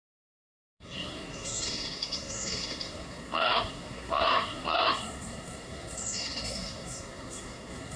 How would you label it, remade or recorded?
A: remade